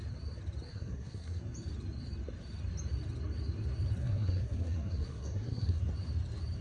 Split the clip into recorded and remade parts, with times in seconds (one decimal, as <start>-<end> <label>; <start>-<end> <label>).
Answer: 0.0-0.7 recorded; 0.7-1.4 remade; 1.4-4.0 recorded; 4.0-5.8 remade; 5.8-6.6 recorded